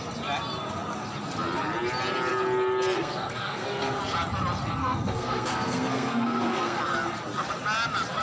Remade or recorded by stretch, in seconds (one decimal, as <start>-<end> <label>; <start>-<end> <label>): 0.0-3.0 recorded; 3.0-4.0 remade; 4.0-4.8 recorded; 4.8-6.8 remade; 6.8-8.2 recorded